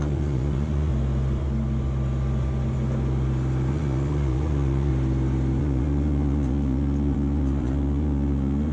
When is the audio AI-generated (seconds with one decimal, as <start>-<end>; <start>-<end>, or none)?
0.0-0.9; 3.7-4.9; 5.6-8.7